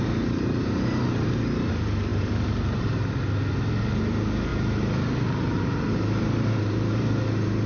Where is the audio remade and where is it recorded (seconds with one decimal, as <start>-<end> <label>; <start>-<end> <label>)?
0.0-2.1 recorded; 2.1-3.2 remade; 3.2-4.5 recorded; 4.5-7.1 remade; 7.1-7.7 recorded